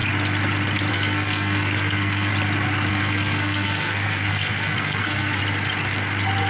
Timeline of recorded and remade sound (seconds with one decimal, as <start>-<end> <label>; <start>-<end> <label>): 0.0-0.9 recorded; 0.9-2.3 remade; 2.3-2.9 recorded; 2.9-5.4 remade; 5.4-6.5 recorded